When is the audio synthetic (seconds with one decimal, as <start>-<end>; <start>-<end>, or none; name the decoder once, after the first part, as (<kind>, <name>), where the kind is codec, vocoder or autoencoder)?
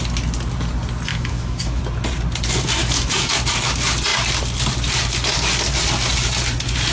1.1-1.8 (autoencoder, DAC-VAE); 2.8-3.3